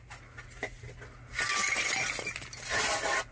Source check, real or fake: real